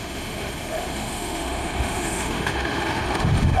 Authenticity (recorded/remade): remade